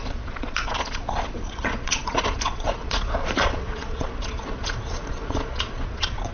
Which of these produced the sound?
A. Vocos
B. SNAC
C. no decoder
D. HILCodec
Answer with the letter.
A